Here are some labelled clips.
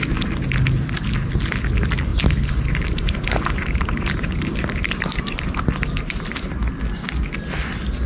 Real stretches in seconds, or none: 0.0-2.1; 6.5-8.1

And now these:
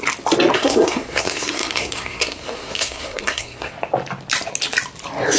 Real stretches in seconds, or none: 0.0-0.5; 3.7-5.4

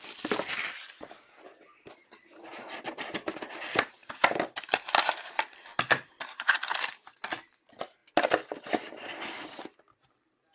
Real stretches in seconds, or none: 8.0-10.1

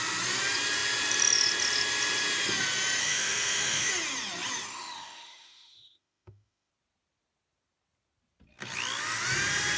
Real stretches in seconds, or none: 0.0-3.0; 3.9-4.7; 6.7-9.8

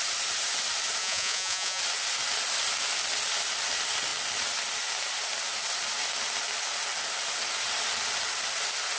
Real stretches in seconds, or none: 0.0-1.0; 1.8-9.0

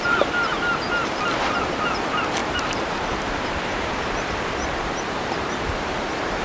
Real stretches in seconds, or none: 0.0-2.4